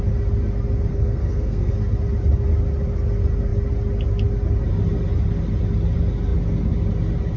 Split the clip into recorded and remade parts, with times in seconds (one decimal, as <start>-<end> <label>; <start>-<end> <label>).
0.0-0.9 recorded; 0.9-1.7 remade; 1.7-7.4 recorded